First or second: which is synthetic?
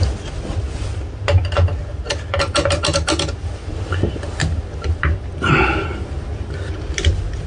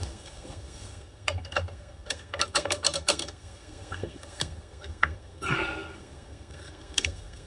second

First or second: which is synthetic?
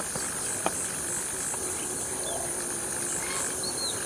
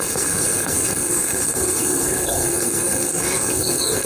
second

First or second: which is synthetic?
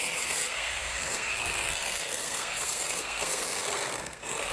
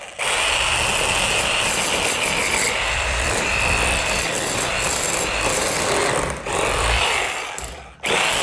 first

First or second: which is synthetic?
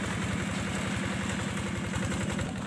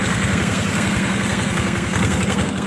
second